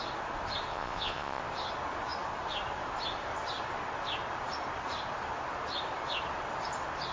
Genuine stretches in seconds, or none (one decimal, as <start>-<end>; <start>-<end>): 0.0-0.7; 1.4-7.1